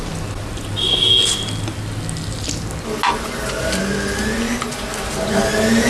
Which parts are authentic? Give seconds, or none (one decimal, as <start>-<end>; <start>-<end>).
0.0-5.9